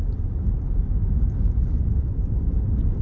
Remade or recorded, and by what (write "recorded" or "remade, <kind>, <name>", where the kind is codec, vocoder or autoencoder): recorded